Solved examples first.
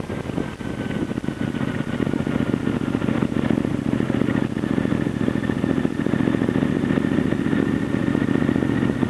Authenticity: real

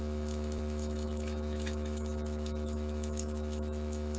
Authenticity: fake